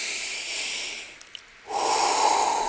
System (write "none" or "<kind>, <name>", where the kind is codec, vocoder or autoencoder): none